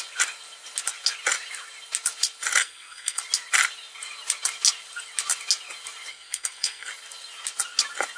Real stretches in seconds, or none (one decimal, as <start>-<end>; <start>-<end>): 0.0-2.6; 3.2-6.1; 6.9-8.2